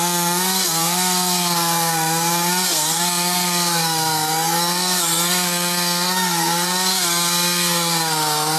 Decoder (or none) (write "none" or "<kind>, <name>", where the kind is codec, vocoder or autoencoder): codec, SNAC